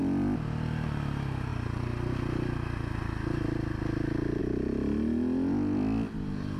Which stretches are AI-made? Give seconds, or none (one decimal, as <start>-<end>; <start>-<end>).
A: none